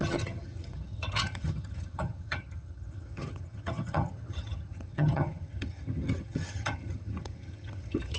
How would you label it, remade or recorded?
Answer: remade